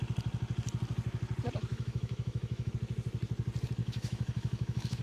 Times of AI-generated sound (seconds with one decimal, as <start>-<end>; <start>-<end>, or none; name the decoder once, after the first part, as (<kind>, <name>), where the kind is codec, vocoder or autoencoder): 1.7-2.7 (autoencoder, DAC-VAE); 3.8-5.0